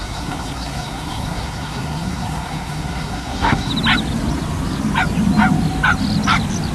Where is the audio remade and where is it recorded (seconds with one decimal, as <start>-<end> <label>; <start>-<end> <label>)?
0.0-3.7 remade; 3.7-6.7 recorded